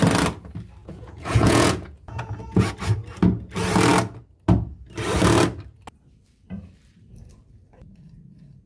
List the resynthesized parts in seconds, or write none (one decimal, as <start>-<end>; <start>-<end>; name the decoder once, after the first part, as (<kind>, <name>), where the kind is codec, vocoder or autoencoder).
0.8-2.7 (vocoder, Vocos)